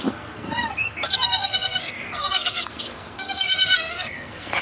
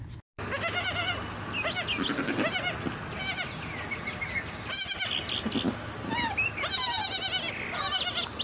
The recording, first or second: second